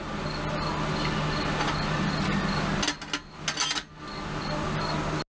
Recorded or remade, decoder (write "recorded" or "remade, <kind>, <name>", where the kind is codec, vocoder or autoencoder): recorded